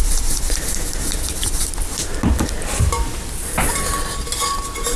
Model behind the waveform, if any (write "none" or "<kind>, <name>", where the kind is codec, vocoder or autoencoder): none